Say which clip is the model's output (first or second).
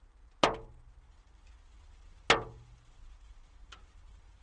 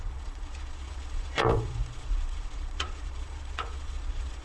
second